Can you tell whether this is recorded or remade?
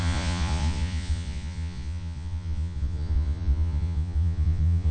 remade